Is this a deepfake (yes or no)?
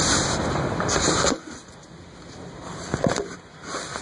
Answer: no